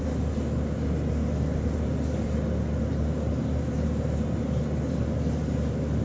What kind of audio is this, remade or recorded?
recorded